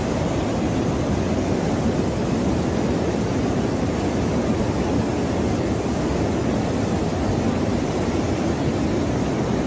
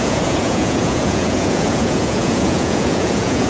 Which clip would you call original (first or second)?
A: first